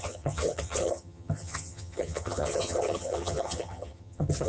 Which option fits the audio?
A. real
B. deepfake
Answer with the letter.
B